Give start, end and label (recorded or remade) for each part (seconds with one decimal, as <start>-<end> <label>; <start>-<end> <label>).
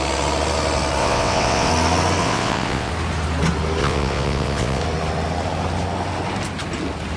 0.0-1.0 recorded; 1.0-1.7 remade; 1.7-2.2 recorded; 2.2-2.9 remade; 2.9-3.8 recorded; 3.8-4.8 remade; 4.8-7.2 recorded